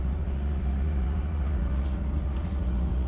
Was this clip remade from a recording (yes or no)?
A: yes